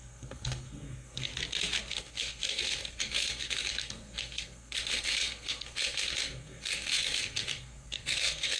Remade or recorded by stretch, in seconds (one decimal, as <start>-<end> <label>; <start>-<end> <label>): 0.0-1.3 remade; 1.3-1.9 recorded; 1.9-8.6 remade